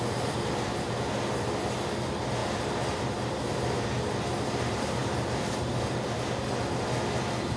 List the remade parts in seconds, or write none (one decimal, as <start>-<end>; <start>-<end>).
none